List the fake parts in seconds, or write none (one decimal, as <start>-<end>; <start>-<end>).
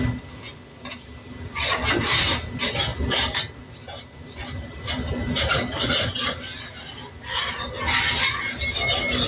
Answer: none